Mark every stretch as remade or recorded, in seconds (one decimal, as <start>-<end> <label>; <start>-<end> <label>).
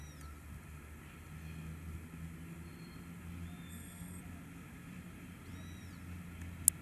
0.0-3.7 recorded; 3.7-4.2 remade; 4.2-6.8 recorded